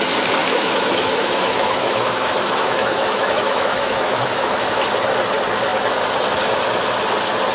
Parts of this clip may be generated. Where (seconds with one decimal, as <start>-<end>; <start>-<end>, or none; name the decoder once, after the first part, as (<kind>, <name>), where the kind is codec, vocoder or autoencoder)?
0.4-4.9 (autoencoder, DAC-VAE)